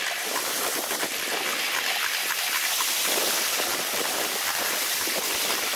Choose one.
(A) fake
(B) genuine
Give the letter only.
B